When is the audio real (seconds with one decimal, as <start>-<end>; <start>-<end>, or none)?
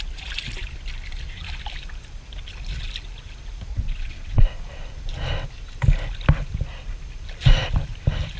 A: 0.0-3.7; 4.4-8.4